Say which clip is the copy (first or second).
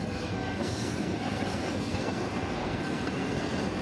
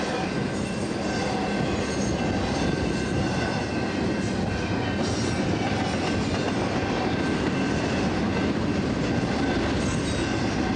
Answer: first